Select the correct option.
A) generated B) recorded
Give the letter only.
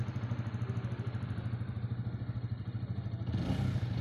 B